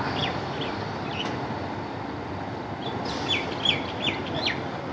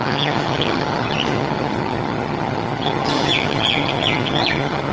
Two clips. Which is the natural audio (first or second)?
first